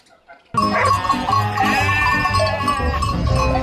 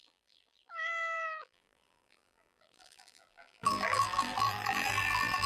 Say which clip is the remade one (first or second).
second